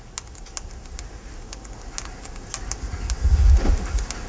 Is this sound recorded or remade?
recorded